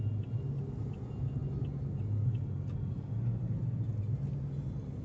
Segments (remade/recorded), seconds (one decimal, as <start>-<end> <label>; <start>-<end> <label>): 0.0-5.0 recorded